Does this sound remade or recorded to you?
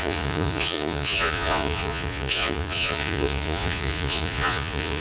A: remade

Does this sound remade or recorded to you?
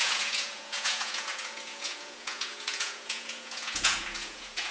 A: remade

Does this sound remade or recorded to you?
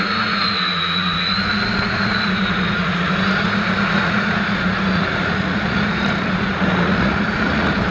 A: remade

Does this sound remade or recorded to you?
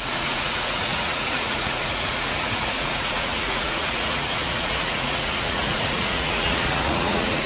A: remade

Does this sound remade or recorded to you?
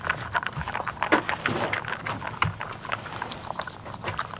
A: recorded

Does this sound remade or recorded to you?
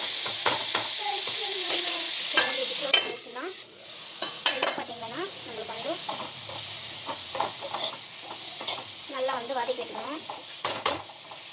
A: remade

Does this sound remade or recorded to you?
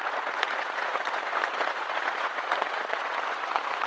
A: remade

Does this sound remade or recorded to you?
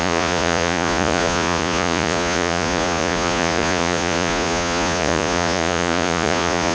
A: remade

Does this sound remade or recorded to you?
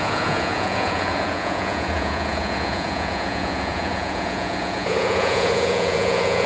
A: remade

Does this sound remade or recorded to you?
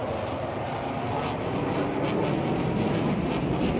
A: recorded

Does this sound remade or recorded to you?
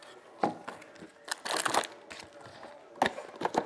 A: recorded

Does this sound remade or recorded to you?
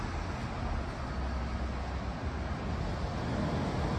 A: recorded